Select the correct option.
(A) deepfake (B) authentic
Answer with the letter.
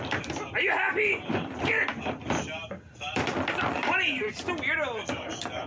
A